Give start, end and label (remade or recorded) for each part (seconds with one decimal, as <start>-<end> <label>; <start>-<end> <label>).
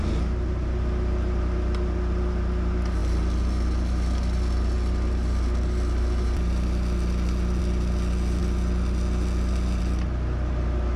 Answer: 0.0-11.0 recorded